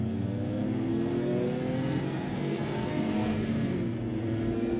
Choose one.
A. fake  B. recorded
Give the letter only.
A